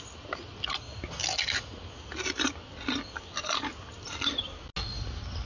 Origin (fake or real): real